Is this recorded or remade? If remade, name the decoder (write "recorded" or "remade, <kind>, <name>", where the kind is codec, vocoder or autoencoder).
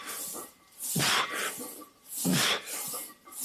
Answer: remade, vocoder, BigVGAN v2